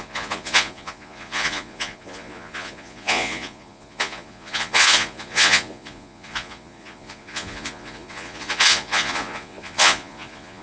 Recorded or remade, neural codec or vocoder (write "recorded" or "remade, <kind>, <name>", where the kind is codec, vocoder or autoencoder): remade, vocoder, Vocos